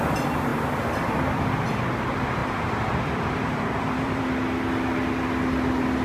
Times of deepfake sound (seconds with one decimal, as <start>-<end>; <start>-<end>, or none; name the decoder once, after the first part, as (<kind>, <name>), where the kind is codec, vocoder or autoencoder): 2.4-4.2 (vocoder, BigVGAN v2)